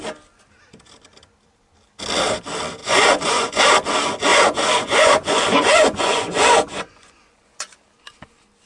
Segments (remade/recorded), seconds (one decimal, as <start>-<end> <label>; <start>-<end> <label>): 0.0-2.8 recorded; 2.8-3.6 remade; 3.6-4.3 recorded; 4.3-7.8 remade; 7.8-8.7 recorded